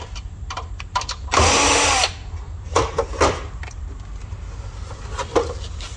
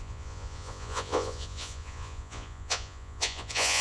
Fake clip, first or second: second